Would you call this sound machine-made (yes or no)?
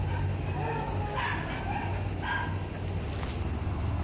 no